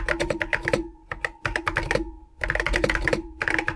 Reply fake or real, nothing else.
real